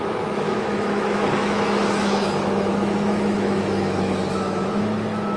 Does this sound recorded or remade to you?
remade